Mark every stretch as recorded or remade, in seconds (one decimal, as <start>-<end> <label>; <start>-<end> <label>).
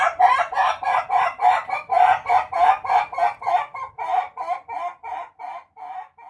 0.0-3.7 recorded; 3.7-5.4 remade; 5.4-6.3 recorded